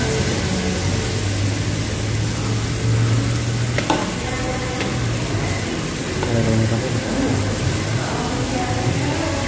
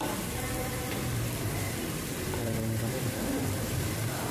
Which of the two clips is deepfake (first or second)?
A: second